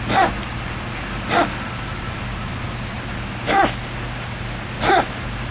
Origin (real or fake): real